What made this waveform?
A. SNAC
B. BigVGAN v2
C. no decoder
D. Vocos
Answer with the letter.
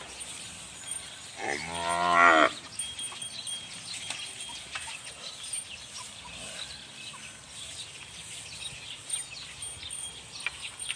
C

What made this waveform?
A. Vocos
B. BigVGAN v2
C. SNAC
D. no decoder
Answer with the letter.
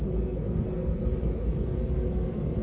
C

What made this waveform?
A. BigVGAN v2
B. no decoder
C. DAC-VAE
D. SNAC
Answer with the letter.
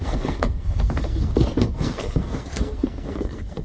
D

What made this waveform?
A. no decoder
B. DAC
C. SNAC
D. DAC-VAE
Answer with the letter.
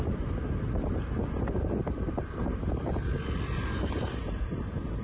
A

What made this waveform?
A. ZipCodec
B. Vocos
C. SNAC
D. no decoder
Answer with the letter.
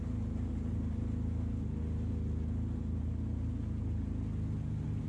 D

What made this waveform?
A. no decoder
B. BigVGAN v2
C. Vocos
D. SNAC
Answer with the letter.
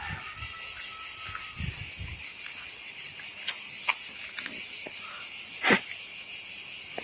A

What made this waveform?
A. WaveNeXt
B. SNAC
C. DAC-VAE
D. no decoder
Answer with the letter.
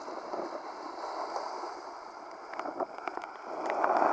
D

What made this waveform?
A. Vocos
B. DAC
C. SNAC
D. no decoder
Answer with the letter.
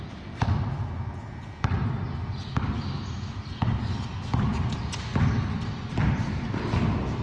D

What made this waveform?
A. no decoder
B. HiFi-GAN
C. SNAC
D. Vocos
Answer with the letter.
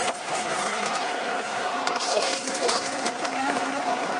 C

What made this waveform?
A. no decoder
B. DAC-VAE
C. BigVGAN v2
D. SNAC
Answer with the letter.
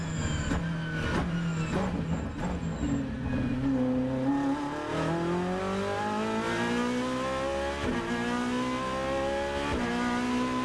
A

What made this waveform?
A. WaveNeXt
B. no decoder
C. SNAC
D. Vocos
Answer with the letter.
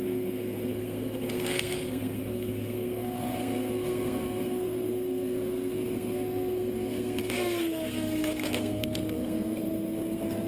C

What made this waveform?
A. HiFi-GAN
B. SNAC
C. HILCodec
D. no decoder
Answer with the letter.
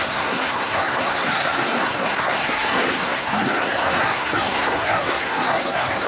B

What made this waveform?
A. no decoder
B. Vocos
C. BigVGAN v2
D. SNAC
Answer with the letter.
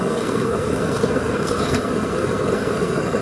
D